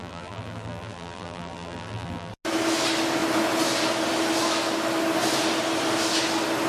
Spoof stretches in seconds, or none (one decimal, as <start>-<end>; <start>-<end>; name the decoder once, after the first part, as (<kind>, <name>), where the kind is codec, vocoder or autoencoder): 0.0-2.3 (vocoder, BigVGAN v2)